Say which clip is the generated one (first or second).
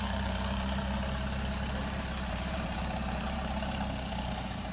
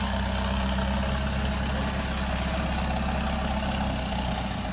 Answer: first